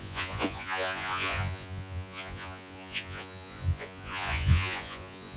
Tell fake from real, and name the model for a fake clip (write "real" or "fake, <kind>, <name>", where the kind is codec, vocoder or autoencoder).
fake, vocoder, Vocos